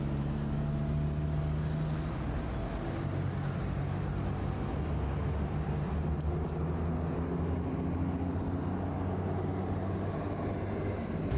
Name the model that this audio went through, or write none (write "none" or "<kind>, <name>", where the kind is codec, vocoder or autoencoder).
none